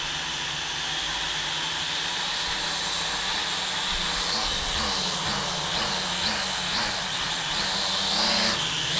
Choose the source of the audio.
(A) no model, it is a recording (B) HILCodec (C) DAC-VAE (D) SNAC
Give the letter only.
A